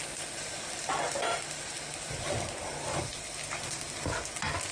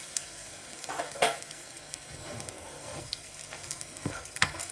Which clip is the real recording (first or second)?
first